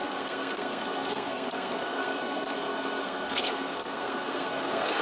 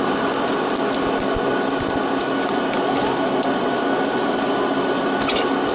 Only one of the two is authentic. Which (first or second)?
second